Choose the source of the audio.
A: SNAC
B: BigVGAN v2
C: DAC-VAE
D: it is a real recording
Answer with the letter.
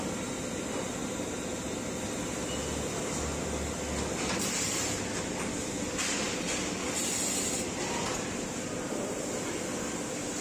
D